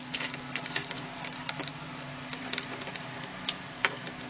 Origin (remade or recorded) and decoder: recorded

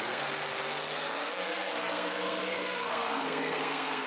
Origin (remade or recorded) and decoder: remade, codec, SNAC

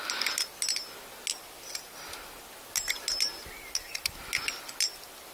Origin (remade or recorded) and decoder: recorded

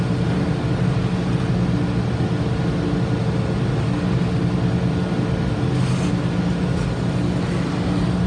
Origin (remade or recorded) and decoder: recorded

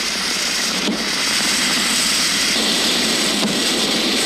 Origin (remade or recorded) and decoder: remade, vocoder, BigVGAN v2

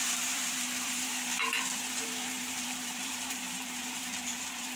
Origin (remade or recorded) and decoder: remade, vocoder, BigVGAN v2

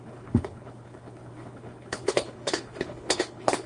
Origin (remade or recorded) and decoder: remade, codec, HILCodec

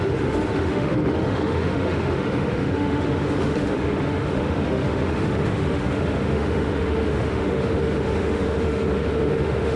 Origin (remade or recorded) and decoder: remade, autoencoder, DAC-VAE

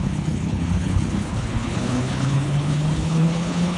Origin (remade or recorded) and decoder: remade, codec, HILCodec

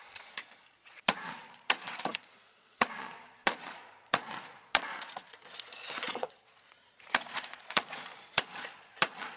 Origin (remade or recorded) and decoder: remade, vocoder, Vocos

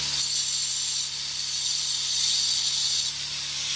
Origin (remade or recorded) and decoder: recorded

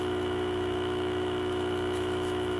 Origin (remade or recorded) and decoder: remade, autoencoder, DAC-VAE